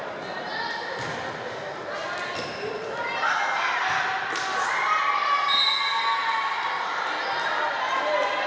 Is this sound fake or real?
real